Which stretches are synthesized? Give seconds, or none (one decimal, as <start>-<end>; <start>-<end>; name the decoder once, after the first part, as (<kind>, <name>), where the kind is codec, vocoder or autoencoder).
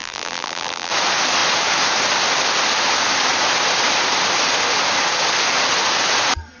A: 0.0-0.9 (vocoder, BigVGAN v2)